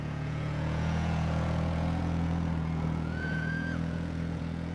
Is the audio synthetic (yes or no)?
yes